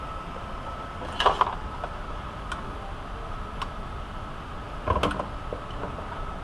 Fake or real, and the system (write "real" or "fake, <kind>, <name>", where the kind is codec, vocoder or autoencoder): real